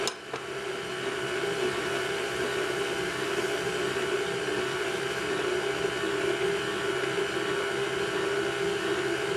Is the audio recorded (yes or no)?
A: yes